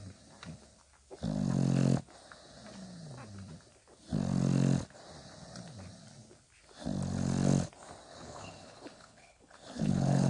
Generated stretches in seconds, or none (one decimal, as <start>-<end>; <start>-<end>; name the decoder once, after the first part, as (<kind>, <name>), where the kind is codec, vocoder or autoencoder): 8.1-10.3 (codec, HILCodec)